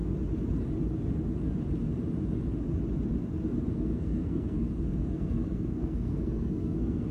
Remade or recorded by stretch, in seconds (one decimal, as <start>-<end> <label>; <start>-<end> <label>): 0.0-3.7 recorded; 3.7-7.1 remade